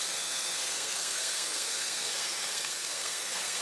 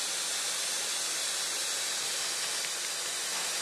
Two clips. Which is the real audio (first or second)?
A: second